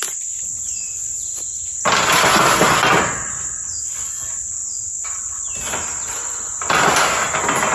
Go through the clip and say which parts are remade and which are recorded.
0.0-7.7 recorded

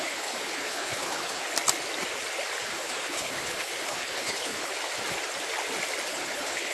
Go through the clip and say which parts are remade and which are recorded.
0.0-1.4 remade; 1.4-2.6 recorded; 2.6-4.7 remade; 4.7-6.1 recorded; 6.1-6.7 remade

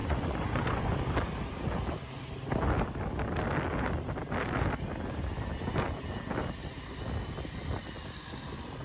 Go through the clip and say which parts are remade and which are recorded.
0.0-0.9 remade; 0.9-8.8 recorded

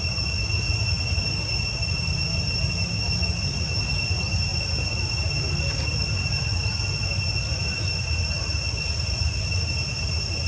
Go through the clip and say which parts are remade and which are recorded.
0.0-10.5 recorded